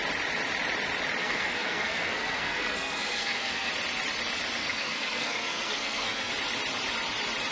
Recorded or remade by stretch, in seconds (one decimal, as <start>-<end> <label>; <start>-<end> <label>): 0.0-1.2 recorded; 1.2-3.7 remade; 3.7-4.6 recorded; 4.6-6.3 remade; 6.3-7.5 recorded